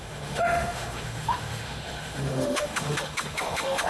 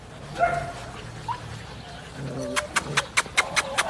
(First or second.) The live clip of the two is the second